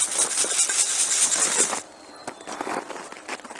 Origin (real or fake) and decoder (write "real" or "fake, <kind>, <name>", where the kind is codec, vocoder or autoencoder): real